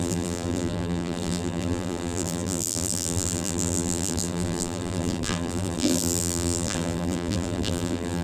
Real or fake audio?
fake